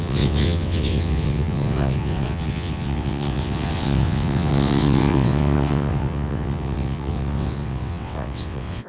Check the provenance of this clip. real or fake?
fake